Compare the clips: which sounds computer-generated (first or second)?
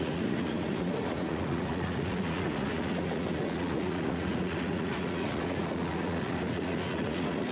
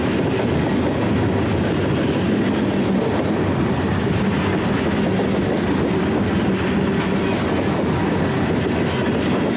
first